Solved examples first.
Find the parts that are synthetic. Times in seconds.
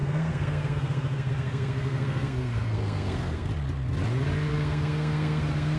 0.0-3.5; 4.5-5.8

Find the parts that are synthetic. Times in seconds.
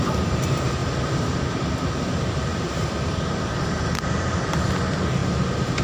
0.8-1.4; 2.5-4.7; 5.2-5.8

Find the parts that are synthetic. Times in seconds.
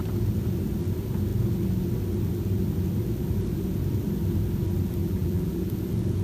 5.0-5.7